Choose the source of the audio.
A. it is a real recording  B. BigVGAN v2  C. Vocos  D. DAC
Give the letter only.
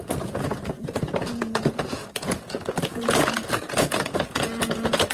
C